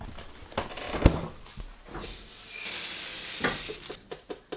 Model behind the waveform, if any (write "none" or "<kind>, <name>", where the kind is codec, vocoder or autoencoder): none